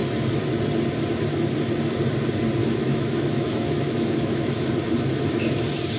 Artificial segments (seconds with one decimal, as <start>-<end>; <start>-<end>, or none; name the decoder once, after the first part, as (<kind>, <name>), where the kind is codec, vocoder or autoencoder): 2.6-4.7 (autoencoder, DAC-VAE)